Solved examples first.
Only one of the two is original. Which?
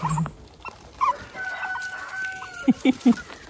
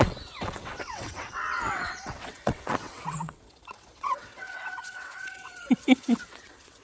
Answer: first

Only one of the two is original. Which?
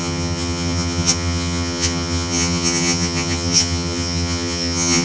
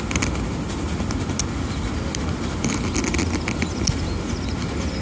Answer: second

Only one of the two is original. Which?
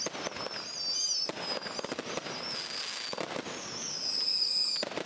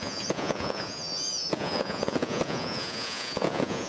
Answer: first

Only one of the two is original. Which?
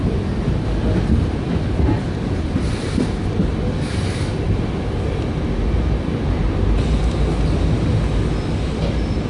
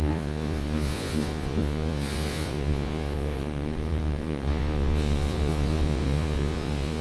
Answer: first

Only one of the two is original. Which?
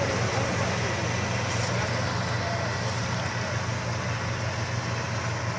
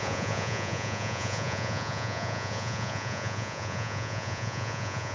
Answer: first